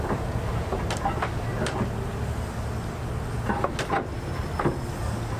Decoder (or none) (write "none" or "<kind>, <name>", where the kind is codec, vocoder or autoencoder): none